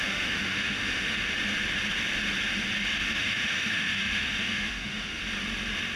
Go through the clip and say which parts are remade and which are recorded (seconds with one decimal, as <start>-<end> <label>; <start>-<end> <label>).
0.0-1.4 remade; 1.4-2.9 recorded; 2.9-5.2 remade; 5.2-6.0 recorded